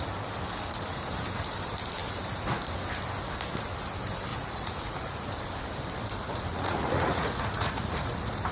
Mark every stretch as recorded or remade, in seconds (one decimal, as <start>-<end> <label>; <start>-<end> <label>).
0.0-4.3 recorded; 4.3-5.3 remade; 5.3-6.2 recorded; 6.2-8.1 remade; 8.1-8.5 recorded